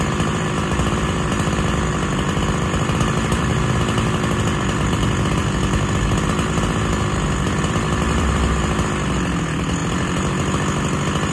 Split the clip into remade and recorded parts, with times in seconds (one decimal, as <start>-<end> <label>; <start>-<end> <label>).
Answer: 0.0-3.5 remade; 3.5-4.4 recorded; 4.4-5.4 remade; 5.4-7.6 recorded; 7.6-9.8 remade; 9.8-11.3 recorded